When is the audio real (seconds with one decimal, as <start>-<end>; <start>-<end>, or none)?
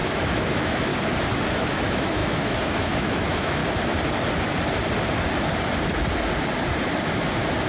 0.9-1.5; 3.6-7.7